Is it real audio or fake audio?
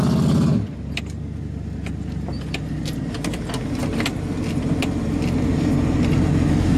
real